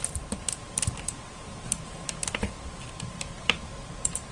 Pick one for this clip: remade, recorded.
remade